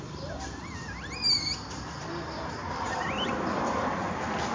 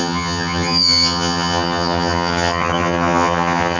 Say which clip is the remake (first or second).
second